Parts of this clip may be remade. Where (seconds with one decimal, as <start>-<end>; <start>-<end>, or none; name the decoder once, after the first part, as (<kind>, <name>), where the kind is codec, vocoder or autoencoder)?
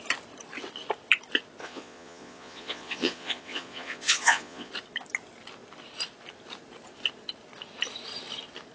1.6-4.7 (vocoder, Vocos)